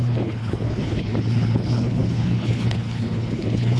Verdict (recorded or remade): remade